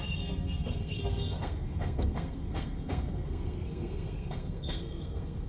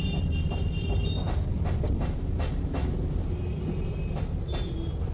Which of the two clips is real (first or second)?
second